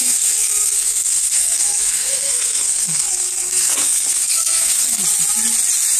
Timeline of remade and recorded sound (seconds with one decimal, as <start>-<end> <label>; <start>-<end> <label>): 0.0-5.0 remade; 5.0-6.0 recorded